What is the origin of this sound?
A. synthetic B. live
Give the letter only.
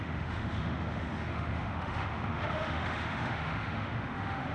A